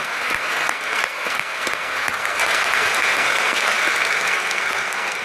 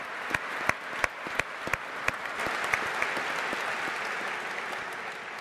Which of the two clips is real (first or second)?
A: second